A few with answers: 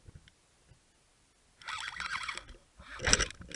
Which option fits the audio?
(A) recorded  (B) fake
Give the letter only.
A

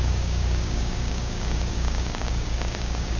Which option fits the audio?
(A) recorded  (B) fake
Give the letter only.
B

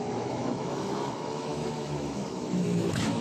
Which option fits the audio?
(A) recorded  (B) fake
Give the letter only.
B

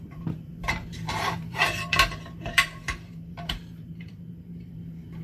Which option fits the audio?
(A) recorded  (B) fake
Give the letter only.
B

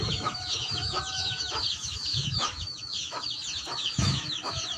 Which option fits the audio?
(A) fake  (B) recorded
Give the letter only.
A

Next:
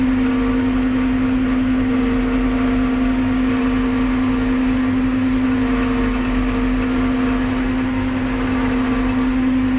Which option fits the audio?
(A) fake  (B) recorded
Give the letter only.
B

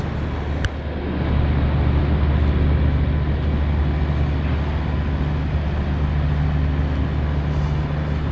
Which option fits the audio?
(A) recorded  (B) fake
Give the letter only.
A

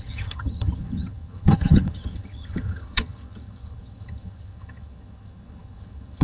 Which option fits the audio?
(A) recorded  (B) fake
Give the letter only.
B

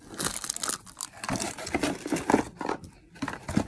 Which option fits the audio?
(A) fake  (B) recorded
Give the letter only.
B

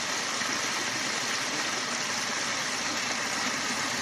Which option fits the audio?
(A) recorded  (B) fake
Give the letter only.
A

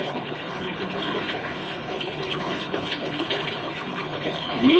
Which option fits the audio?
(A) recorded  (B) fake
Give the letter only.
B